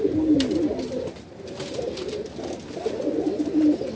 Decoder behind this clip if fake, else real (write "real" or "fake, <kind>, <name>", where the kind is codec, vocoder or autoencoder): real